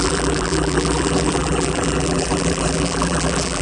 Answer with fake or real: fake